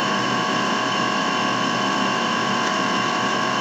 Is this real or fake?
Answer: fake